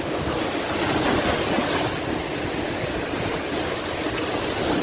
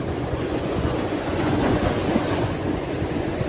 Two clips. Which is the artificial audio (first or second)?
second